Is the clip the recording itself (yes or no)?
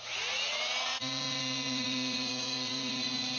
no